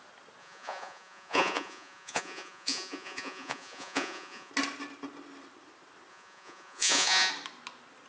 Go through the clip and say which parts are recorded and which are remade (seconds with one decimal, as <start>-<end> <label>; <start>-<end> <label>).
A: 0.0-0.4 recorded; 0.4-4.5 remade; 4.5-6.1 recorded; 6.1-7.3 remade; 7.3-8.1 recorded